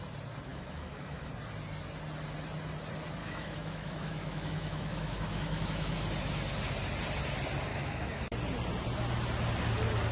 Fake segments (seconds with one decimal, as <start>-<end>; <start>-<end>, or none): 0.5-1.3; 3.2-6.0; 7.7-8.2